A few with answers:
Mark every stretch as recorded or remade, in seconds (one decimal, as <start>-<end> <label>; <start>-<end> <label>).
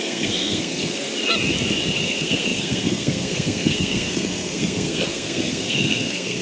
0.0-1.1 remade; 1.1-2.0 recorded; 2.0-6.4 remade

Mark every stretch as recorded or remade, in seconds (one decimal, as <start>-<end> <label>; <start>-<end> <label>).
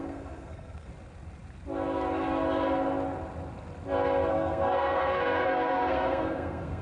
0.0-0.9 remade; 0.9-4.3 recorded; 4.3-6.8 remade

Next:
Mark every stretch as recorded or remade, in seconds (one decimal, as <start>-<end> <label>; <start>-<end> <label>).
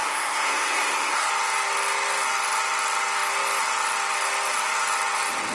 0.0-1.3 remade; 1.3-5.5 recorded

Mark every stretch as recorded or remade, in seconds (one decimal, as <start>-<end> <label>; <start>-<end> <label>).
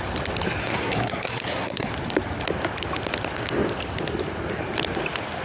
0.0-0.6 recorded; 0.6-1.9 remade; 1.9-5.4 recorded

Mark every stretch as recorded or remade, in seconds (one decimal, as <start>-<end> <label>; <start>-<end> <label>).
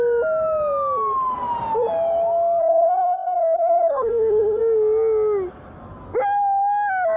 0.0-2.6 recorded; 2.6-4.6 remade; 4.6-7.2 recorded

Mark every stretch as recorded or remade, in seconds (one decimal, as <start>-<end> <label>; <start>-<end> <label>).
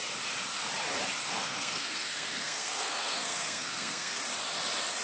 0.0-1.2 recorded; 1.2-4.2 remade; 4.2-5.0 recorded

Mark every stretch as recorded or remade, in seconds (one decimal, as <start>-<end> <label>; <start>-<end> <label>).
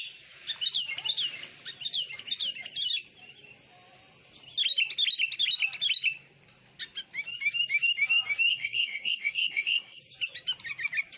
0.0-8.5 recorded; 8.5-10.0 remade; 10.0-11.2 recorded